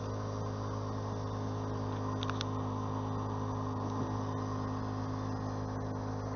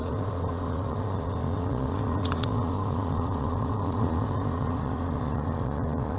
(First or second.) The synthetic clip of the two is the second